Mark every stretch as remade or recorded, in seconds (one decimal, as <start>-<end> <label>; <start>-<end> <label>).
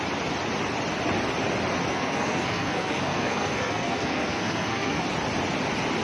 0.0-1.9 recorded; 1.9-5.0 remade; 5.0-6.0 recorded